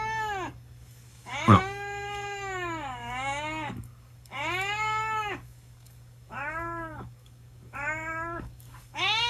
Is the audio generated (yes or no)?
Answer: yes